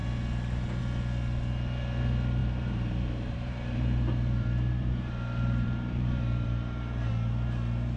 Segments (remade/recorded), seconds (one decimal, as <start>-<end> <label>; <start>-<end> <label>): 0.0-2.4 recorded; 2.4-7.1 remade; 7.1-8.0 recorded